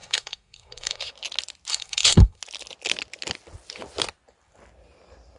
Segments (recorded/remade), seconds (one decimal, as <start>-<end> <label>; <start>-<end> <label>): 0.0-1.1 remade; 1.1-1.7 recorded; 1.7-2.4 remade; 2.4-5.4 recorded

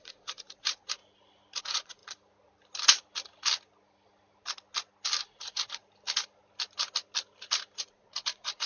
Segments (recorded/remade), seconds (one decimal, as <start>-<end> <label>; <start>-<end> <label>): 0.0-1.0 remade; 1.0-1.6 recorded; 1.6-2.0 remade; 2.0-5.2 recorded; 5.2-5.8 remade; 5.8-7.9 recorded; 7.9-8.7 remade

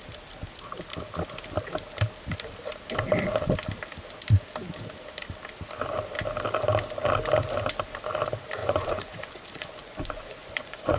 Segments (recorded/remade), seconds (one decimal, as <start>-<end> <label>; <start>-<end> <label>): 0.0-8.6 recorded; 8.6-11.0 remade

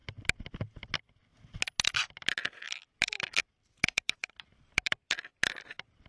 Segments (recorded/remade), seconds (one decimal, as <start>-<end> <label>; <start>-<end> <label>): 0.0-3.4 recorded; 3.4-5.4 remade; 5.4-6.1 recorded